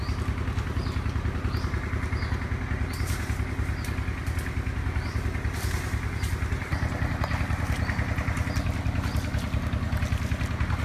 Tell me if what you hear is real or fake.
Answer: real